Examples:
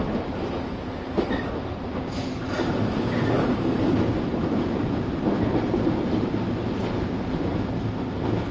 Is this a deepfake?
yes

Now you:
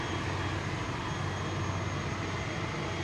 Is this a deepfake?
no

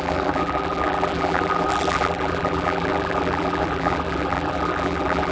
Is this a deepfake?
yes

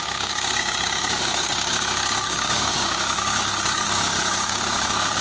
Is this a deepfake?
yes